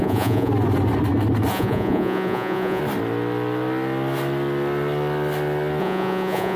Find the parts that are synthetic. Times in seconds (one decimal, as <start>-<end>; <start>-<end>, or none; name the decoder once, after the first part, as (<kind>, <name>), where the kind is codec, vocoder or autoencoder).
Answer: 0.0-0.5 (vocoder, Vocos); 1.5-2.8; 5.8-6.6

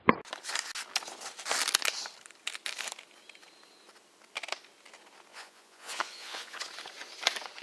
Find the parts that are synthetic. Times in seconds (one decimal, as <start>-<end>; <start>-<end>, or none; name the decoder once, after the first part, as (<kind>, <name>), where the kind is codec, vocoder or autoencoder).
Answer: 5.3-6.6 (vocoder, Vocos)

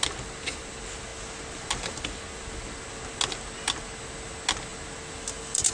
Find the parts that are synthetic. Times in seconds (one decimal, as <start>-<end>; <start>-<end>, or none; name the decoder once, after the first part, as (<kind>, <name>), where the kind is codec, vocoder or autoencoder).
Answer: none

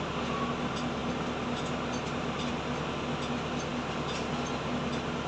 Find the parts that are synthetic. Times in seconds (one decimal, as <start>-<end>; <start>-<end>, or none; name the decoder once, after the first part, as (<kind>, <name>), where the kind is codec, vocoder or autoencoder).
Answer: none

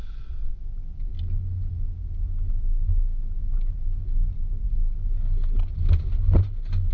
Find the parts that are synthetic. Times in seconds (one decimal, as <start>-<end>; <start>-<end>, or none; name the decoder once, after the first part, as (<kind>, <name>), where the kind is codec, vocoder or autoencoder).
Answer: 0.0-0.5 (vocoder, Vocos)